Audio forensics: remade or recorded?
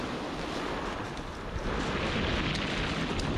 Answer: recorded